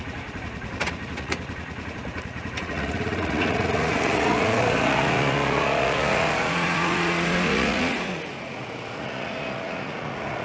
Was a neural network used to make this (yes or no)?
yes